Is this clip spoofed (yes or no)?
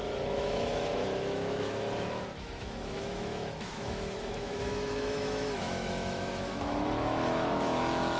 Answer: yes